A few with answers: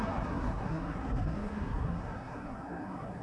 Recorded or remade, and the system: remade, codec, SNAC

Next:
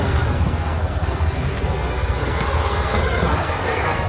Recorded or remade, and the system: remade, codec, SNAC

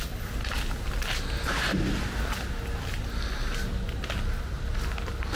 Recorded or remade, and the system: recorded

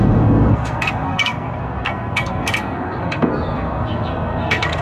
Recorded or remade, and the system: remade, codec, SNAC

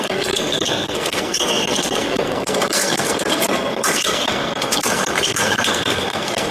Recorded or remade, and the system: remade, codec, SNAC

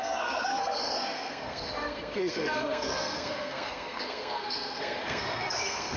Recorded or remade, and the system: remade, codec, SNAC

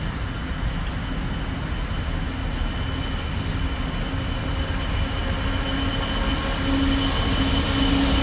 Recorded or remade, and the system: recorded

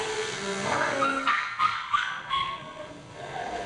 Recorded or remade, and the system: remade, codec, SNAC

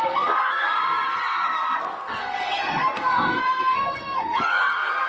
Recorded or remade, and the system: remade, codec, SNAC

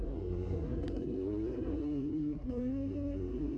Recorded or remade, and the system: remade, codec, SNAC